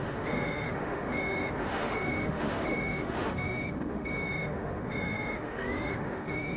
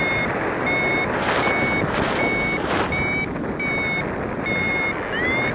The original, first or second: second